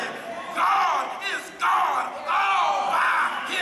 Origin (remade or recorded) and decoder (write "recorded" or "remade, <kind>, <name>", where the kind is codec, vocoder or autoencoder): recorded